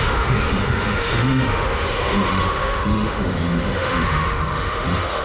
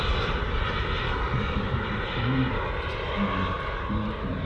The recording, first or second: second